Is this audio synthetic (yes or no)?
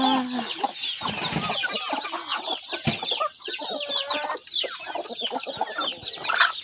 no